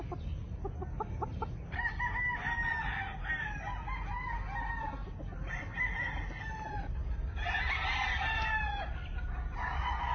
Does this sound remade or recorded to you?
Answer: recorded